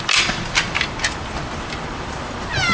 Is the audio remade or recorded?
remade